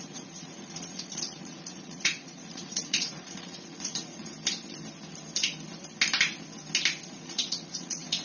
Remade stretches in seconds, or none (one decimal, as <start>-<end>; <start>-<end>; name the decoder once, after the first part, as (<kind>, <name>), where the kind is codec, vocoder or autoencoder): 0.0-4.2 (vocoder, Vocos); 7.1-8.2